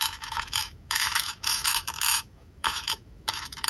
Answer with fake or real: fake